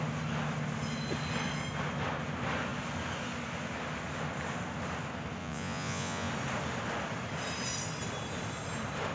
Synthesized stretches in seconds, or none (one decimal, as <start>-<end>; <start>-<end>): 5.4-6.3